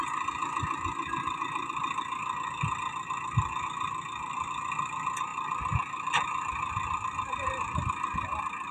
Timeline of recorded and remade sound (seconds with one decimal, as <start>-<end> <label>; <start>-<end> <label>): 0.0-8.7 recorded